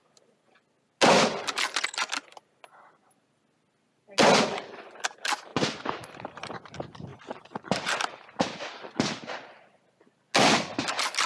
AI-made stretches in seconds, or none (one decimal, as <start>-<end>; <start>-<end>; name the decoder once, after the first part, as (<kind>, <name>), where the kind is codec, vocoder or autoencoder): none